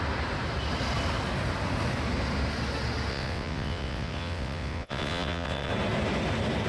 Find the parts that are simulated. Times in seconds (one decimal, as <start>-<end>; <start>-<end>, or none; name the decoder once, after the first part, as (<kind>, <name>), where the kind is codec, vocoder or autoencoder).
3.1-5.7 (vocoder, WaveNeXt)